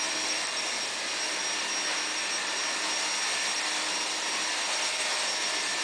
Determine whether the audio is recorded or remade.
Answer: recorded